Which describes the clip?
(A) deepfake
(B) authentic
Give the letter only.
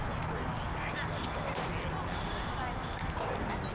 B